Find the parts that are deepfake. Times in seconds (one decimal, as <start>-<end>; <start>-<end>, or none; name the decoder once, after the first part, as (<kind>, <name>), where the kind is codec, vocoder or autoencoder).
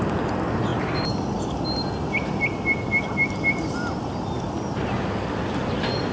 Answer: none